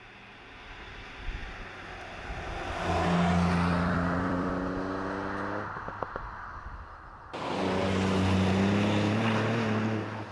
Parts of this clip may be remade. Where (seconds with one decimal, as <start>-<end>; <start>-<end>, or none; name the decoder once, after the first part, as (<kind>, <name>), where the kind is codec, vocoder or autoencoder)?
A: 3.7-4.5 (vocoder, BigVGAN v2)